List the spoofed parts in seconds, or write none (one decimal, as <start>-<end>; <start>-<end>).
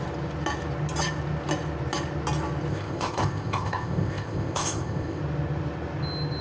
2.7-5.2